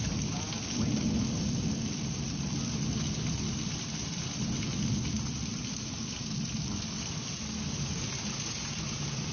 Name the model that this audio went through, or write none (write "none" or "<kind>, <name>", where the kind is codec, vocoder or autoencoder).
none